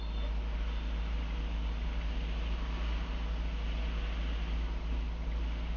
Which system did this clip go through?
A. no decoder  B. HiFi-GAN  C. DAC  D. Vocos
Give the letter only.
A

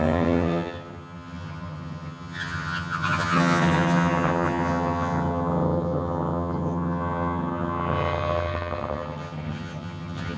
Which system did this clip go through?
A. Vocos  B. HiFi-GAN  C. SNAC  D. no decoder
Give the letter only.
B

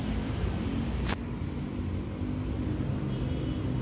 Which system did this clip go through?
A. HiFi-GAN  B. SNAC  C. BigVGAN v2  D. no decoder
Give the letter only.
D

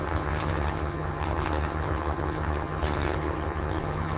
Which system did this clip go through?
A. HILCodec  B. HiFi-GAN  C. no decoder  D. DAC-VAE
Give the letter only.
B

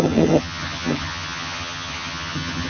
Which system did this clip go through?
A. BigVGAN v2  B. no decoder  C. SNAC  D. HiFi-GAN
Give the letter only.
D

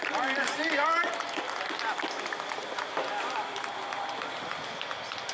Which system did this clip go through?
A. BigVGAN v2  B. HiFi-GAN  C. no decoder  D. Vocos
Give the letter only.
C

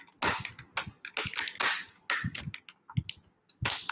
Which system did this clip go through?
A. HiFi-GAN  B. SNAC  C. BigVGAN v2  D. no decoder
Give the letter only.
D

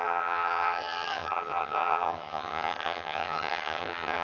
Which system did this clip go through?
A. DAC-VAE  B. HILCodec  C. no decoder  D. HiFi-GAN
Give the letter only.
D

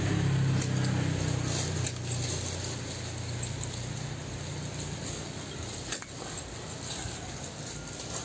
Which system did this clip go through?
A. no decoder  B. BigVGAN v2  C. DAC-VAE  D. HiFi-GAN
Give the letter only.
A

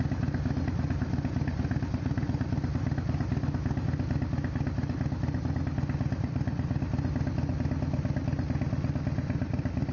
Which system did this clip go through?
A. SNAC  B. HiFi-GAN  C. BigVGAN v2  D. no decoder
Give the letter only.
D